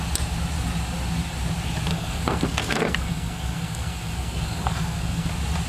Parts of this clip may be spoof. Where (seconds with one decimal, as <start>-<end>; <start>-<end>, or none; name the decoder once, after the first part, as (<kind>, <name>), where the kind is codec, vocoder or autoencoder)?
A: 1.9-5.3 (codec, SNAC)